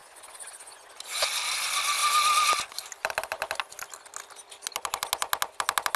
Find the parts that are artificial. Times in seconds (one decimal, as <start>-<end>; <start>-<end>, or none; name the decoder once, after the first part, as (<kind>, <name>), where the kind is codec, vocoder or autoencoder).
0.0-0.9 (vocoder, Vocos)